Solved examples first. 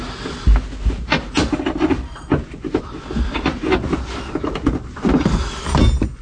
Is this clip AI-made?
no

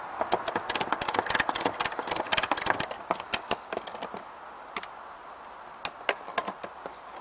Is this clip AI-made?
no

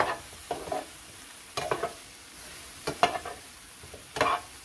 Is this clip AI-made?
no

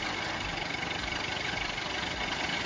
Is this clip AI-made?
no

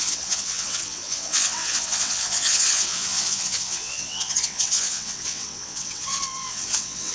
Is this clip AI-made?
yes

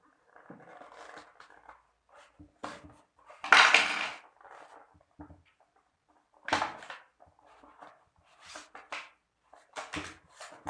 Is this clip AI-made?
no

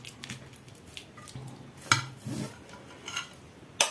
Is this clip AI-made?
no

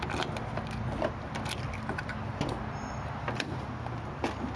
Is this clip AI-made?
no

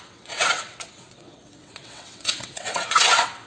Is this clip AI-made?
yes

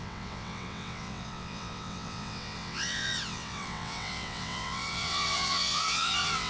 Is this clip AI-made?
yes